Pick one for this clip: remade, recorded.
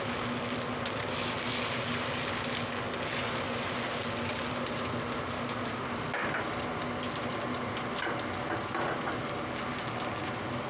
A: recorded